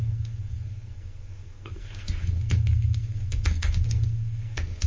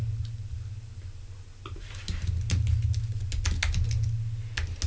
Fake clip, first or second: first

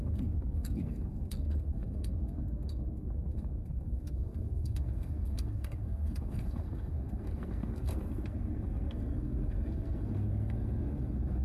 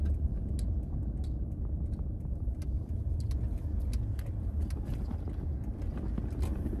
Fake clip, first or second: first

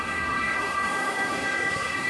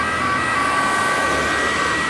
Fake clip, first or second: first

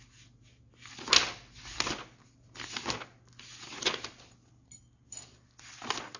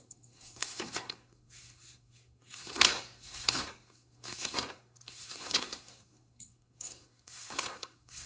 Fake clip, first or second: second